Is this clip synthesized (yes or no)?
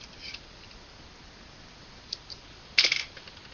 no